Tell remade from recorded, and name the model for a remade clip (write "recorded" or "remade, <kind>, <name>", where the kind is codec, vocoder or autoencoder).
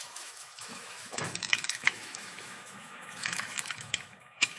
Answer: remade, autoencoder, DAC-VAE